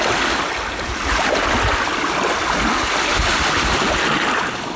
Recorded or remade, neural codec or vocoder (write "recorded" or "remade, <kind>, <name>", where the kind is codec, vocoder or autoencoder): recorded